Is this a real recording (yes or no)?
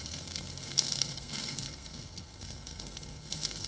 no